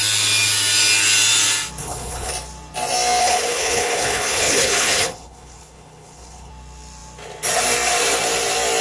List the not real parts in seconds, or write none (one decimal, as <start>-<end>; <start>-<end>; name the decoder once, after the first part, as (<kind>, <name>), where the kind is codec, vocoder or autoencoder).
1.8-2.3 (codec, HILCodec); 3.2-6.5